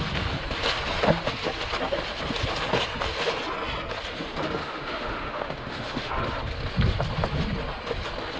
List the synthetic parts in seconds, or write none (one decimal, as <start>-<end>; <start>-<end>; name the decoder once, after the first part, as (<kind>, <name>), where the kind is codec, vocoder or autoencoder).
4.6-6.1 (autoencoder, DAC-VAE)